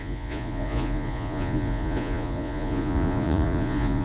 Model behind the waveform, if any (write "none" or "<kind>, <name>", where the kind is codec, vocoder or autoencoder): vocoder, Vocos